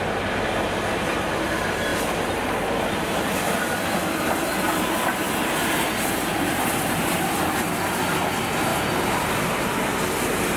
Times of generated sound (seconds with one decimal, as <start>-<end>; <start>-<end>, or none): 8.7-9.4